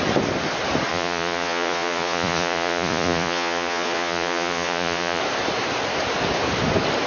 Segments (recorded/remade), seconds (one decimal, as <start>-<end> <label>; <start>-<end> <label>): 0.0-0.9 recorded; 0.9-5.2 remade; 5.2-7.1 recorded